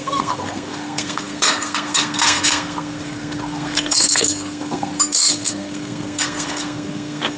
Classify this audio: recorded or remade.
remade